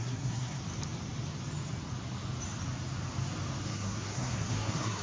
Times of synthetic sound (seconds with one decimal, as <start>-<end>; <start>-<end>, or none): 0.0-0.6; 3.6-5.0